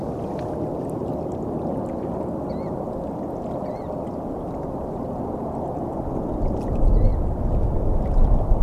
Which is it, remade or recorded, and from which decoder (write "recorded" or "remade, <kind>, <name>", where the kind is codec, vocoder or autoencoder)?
recorded